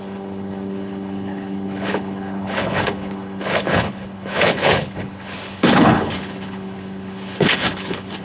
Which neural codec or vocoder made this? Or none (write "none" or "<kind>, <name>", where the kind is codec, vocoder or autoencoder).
codec, HILCodec